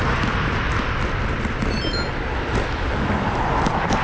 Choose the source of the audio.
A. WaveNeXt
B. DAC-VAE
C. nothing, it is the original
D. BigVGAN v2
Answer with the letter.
C